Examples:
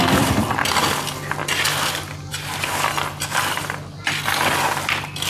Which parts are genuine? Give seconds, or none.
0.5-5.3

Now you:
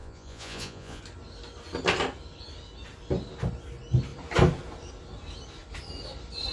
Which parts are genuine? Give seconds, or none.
1.0-6.5

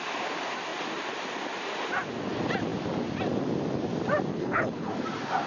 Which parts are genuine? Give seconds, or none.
0.0-4.3; 4.9-5.5

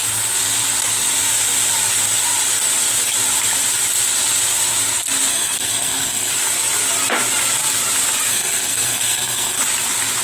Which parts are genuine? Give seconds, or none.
0.0-5.3; 6.3-8.3; 9.6-10.2

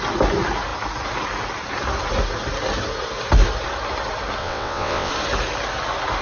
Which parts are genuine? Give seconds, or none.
0.0-4.4; 5.1-6.2